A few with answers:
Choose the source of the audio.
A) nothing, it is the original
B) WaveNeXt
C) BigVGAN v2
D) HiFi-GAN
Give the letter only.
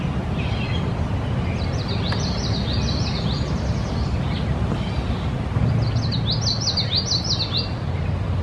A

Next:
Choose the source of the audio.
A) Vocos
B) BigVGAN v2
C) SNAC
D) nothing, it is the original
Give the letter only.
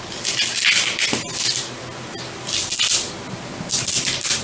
D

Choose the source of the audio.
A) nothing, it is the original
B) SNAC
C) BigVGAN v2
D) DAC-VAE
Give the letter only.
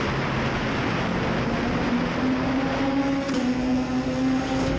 A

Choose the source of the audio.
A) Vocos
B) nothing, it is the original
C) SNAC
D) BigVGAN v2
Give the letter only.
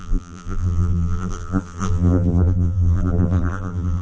D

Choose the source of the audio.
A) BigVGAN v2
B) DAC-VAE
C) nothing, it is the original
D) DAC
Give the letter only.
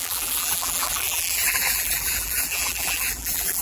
A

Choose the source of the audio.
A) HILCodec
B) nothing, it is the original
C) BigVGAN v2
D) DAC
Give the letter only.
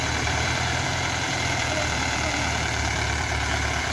C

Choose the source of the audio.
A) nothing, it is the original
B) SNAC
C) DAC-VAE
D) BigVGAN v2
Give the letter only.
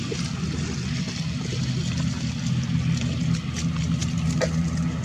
A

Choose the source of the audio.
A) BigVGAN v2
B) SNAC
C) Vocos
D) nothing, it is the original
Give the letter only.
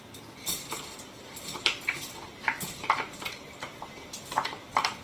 A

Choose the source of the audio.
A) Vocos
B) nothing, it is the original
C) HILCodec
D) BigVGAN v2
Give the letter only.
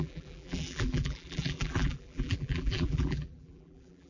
D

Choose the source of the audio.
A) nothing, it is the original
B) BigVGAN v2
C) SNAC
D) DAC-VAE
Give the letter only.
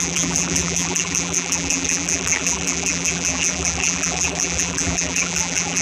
B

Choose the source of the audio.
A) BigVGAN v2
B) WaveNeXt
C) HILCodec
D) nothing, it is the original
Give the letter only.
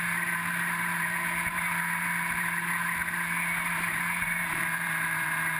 A